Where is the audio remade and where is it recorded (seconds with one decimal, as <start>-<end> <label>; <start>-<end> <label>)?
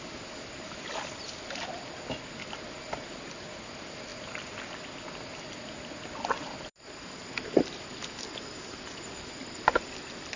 0.0-10.4 recorded